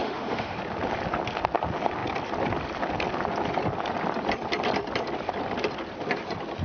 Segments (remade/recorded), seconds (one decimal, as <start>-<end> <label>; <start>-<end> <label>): 0.0-0.6 remade; 0.6-6.6 recorded